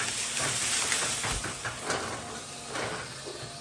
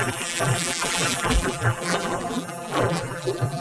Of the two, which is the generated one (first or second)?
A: second